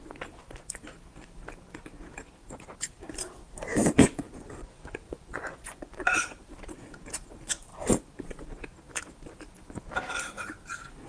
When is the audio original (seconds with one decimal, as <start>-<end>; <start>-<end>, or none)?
0.0-3.8; 6.2-11.1